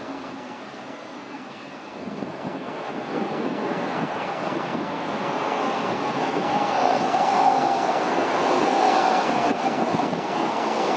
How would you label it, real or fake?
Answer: fake